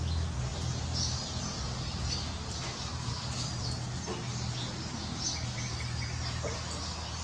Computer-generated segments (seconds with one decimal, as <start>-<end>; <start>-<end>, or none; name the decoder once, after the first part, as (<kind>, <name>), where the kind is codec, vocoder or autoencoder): none